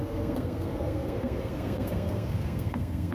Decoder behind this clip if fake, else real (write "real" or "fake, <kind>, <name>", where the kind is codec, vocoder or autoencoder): fake, codec, SNAC